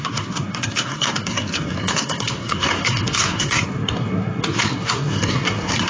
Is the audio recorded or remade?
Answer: remade